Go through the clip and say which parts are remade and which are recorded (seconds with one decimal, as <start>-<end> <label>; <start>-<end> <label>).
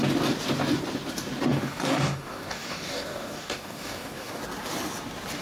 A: 0.0-1.5 recorded; 1.5-4.4 remade; 4.4-5.4 recorded